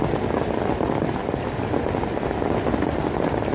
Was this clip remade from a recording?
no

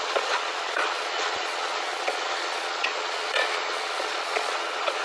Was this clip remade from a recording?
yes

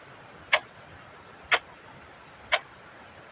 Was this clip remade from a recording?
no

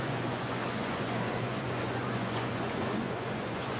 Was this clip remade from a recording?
yes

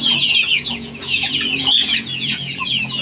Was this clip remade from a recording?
yes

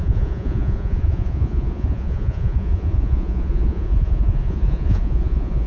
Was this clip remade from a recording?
yes